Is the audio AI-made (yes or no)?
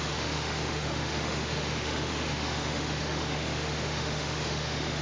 yes